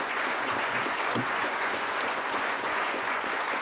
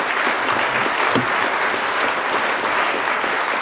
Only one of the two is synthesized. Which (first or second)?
first